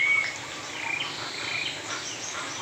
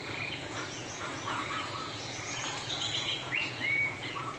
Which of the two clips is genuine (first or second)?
first